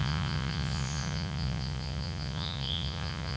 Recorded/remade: remade